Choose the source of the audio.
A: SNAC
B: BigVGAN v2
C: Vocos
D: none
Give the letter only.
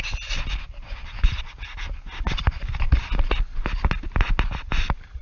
D